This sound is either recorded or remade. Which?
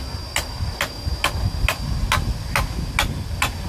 recorded